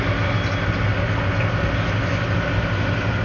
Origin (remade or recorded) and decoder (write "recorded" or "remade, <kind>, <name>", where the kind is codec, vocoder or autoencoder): recorded